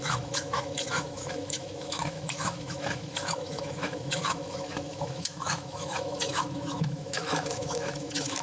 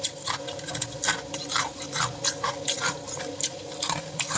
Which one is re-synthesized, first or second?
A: first